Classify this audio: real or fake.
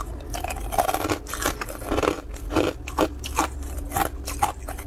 real